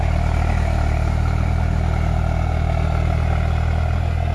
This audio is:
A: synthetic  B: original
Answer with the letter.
B